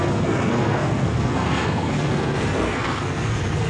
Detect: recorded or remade remade